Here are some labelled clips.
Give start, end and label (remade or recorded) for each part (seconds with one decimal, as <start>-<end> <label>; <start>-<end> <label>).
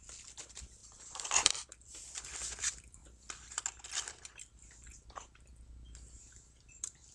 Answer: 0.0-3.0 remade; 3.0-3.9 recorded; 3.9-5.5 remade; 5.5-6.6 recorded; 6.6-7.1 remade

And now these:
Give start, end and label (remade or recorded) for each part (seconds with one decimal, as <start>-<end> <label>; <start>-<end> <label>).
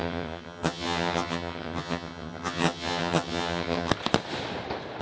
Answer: 0.0-3.9 remade; 3.9-5.0 recorded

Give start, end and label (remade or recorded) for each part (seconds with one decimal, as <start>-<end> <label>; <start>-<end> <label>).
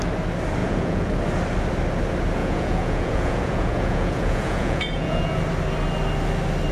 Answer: 0.0-0.6 recorded; 0.6-1.1 remade; 1.1-2.4 recorded; 2.4-5.4 remade; 5.4-6.7 recorded